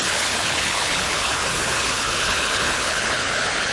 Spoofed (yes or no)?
yes